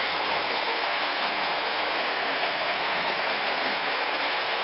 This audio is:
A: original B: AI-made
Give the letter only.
B